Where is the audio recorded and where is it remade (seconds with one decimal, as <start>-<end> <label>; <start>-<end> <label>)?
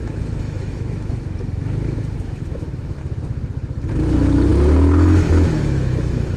0.0-3.0 remade; 3.0-3.9 recorded; 3.9-4.5 remade; 4.5-5.3 recorded; 5.3-6.4 remade